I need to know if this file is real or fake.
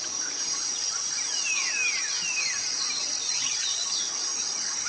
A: fake